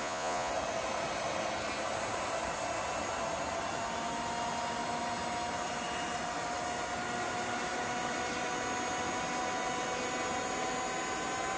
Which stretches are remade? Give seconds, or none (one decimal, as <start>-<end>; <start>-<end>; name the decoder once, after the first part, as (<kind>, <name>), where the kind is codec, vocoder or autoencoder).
0.0-0.5 (vocoder, Vocos)